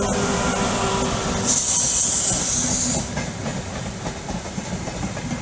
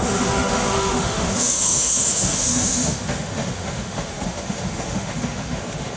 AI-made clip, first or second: second